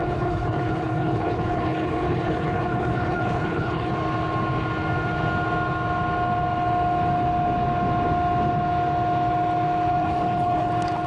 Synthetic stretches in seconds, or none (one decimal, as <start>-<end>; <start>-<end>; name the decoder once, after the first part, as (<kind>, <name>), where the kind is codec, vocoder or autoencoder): 0.0-3.9 (codec, HILCodec); 9.9-10.7